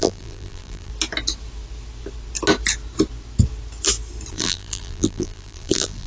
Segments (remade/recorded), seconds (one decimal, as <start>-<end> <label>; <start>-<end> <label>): 0.0-0.9 remade; 0.9-4.3 recorded; 4.3-6.1 remade